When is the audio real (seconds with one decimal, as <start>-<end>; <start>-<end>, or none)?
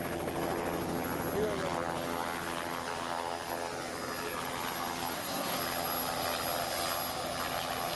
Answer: 0.0-5.1; 5.6-8.0